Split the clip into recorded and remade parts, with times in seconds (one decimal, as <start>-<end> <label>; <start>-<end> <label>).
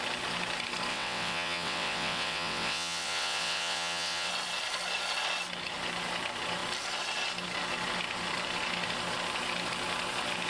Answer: 0.0-0.9 recorded; 0.9-4.3 remade; 4.3-10.5 recorded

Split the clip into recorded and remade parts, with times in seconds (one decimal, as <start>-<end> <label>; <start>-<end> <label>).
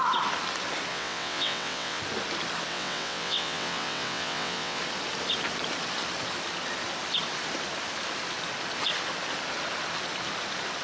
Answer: 0.0-0.9 recorded; 0.9-2.0 remade; 2.0-2.7 recorded; 2.7-4.8 remade; 4.8-10.8 recorded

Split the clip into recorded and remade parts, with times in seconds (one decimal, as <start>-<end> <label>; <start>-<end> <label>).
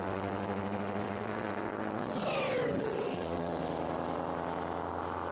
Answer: 0.0-2.2 remade; 2.2-2.8 recorded; 2.8-3.6 remade; 3.6-5.3 recorded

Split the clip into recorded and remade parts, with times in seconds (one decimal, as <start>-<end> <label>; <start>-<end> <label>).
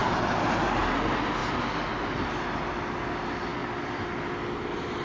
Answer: 0.0-5.0 recorded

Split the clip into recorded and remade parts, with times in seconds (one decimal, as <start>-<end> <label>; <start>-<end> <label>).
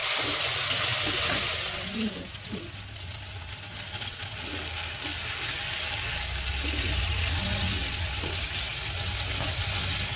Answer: 0.0-0.5 recorded; 0.5-4.5 remade; 4.5-6.8 recorded; 6.8-10.2 remade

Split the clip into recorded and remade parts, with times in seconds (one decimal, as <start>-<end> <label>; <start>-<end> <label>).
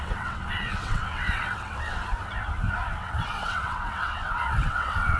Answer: 0.0-2.0 remade; 2.0-2.9 recorded; 2.9-5.2 remade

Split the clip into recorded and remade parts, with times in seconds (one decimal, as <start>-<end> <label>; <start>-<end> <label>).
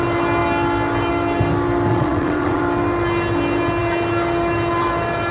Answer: 0.0-1.9 recorded; 1.9-2.6 remade; 2.6-5.3 recorded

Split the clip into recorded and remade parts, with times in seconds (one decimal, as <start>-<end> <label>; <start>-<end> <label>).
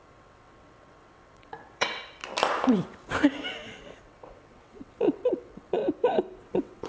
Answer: 0.0-2.2 remade; 2.2-4.0 recorded; 4.0-5.8 remade; 5.8-6.4 recorded; 6.4-6.9 remade